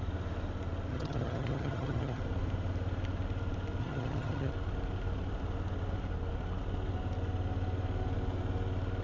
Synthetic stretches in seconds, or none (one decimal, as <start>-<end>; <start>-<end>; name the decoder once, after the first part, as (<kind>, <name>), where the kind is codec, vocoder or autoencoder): 0.9-2.2 (vocoder, HiFi-GAN); 3.8-4.5